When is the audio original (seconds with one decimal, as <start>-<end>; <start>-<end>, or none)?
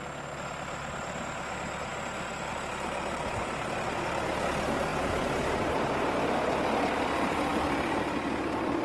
0.0-7.5; 8.0-8.8